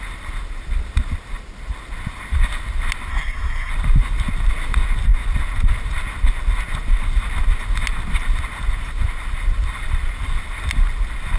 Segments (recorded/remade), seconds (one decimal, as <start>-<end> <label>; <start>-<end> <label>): 0.0-3.1 recorded; 3.1-3.7 remade; 3.7-11.4 recorded